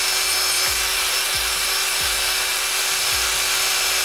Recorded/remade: recorded